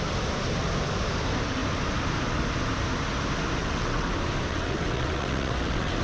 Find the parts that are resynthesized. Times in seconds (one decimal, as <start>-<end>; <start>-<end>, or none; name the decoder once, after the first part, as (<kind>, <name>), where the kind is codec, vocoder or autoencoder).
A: 3.6-4.1 (vocoder, WaveNeXt); 4.5-6.0